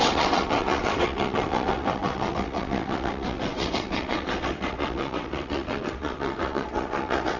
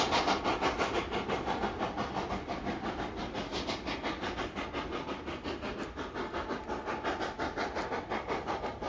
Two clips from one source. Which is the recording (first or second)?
second